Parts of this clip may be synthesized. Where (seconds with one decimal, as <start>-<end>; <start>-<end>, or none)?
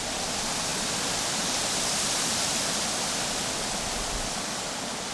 none